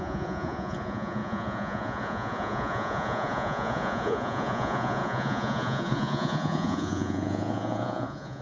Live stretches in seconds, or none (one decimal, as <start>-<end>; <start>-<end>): none